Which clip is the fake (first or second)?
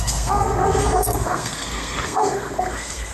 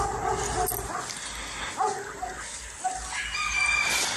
first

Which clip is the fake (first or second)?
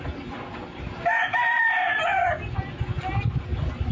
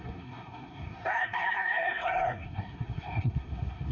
second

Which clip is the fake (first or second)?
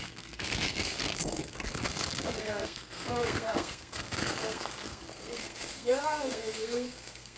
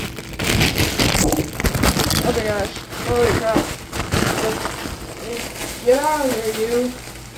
first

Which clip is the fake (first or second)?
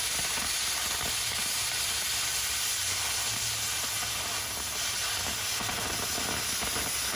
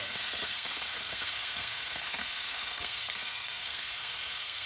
second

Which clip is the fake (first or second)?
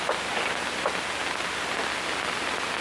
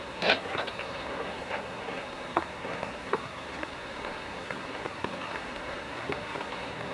second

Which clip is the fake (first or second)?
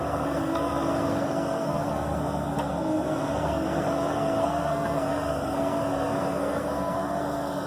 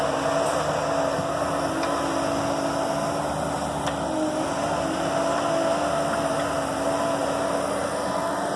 first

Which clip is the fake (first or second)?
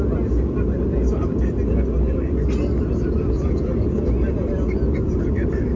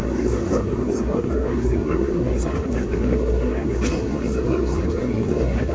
second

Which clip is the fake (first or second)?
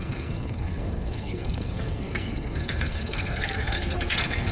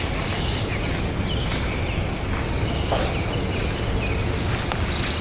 first